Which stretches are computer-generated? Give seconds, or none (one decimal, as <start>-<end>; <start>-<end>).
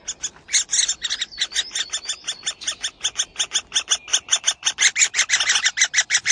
none